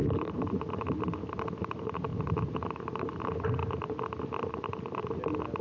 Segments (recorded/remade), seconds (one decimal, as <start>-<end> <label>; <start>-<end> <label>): 0.0-0.8 remade; 0.8-2.1 recorded; 2.1-3.2 remade; 3.2-5.6 recorded